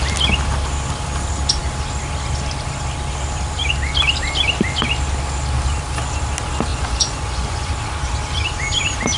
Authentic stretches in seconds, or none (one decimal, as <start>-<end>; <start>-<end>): 0.0-6.7; 7.7-9.2